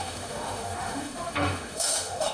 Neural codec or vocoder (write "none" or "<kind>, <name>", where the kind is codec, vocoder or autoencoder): autoencoder, DAC-VAE